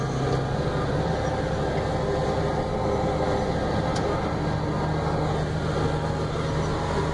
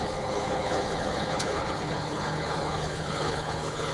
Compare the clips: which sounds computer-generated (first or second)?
second